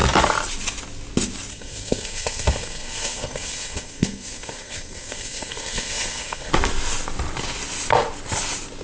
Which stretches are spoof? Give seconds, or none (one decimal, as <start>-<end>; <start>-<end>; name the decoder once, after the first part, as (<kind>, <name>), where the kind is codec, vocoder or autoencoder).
1.5-6.5 (codec, SNAC)

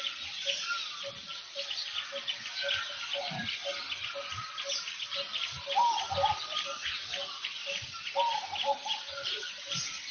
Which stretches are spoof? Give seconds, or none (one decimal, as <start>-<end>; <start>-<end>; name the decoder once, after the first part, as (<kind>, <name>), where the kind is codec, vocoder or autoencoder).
5.3-8.1 (vocoder, BigVGAN v2); 8.8-9.7